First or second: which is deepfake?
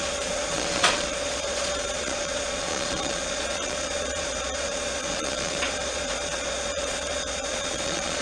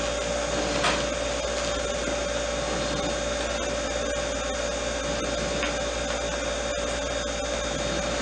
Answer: first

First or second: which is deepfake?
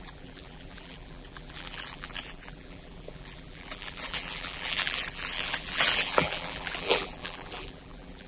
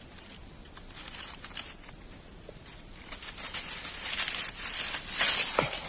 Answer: first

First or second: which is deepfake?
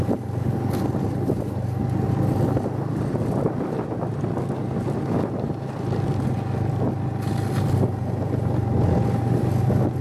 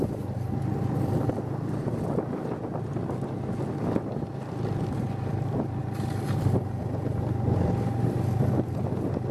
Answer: second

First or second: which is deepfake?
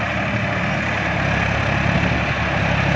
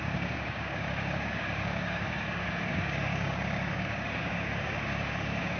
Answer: second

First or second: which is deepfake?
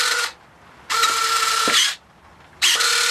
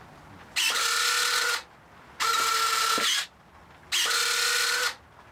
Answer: first